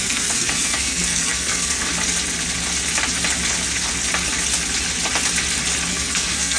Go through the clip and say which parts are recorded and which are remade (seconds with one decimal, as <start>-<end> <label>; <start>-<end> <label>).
0.0-1.9 remade; 1.9-5.9 recorded; 5.9-6.6 remade